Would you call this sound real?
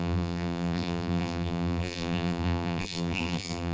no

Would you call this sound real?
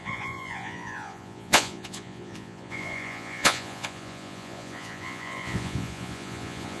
no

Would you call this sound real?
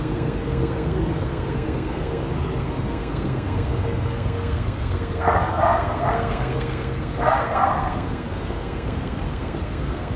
no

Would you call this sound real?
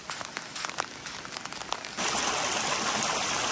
yes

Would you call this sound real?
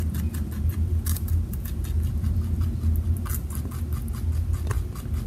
yes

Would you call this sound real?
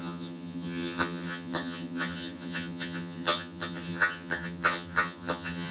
no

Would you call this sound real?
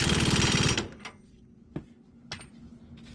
yes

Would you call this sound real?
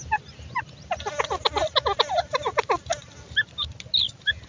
yes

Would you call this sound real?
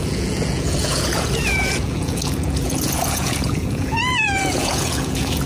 no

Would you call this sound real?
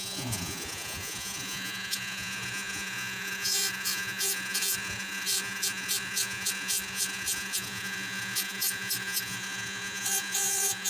no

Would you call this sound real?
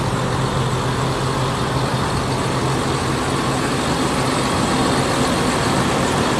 yes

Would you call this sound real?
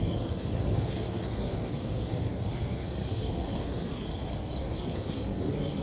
no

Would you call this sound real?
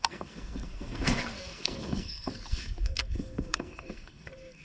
no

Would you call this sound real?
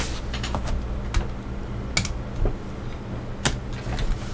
yes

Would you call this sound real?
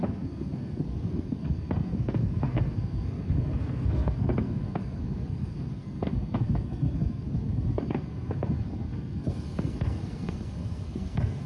no